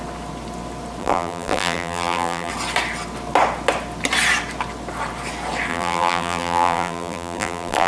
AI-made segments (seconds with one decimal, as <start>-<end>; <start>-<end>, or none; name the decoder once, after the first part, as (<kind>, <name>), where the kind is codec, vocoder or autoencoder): 1.0-2.5 (vocoder, BigVGAN v2); 5.7-7.9